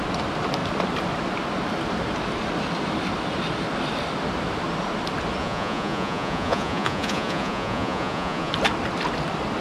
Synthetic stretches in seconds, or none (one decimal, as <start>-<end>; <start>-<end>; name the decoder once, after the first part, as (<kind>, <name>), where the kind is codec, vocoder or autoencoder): 5.4-8.5 (vocoder, Vocos)